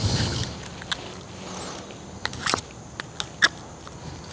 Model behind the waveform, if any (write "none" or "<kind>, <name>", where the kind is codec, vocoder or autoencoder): none